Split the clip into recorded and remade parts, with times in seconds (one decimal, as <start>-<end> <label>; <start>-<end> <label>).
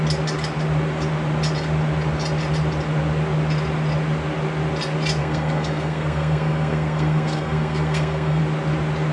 0.0-5.2 recorded; 5.2-8.4 remade; 8.4-9.1 recorded